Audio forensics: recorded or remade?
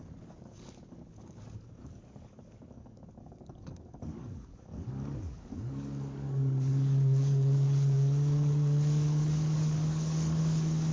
remade